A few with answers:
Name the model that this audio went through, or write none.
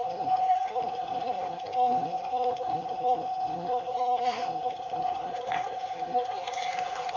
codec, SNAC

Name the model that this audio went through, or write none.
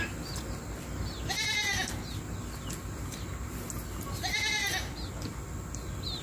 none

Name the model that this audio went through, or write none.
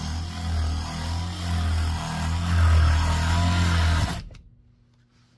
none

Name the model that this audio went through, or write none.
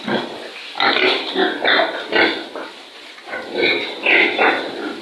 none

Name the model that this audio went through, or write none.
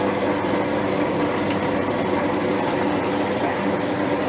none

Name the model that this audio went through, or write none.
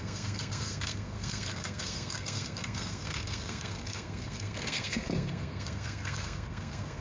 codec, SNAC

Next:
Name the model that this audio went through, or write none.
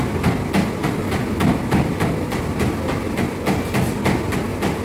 none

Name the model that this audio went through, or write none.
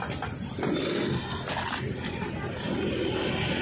none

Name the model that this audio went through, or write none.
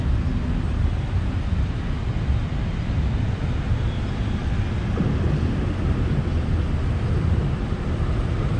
none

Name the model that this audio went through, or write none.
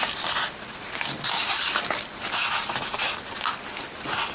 none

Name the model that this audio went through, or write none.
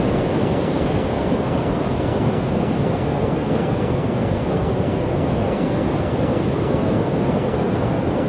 codec, SNAC